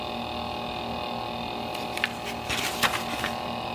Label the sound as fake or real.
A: real